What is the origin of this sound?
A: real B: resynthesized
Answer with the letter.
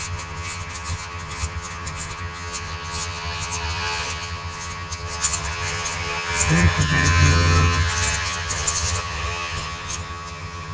B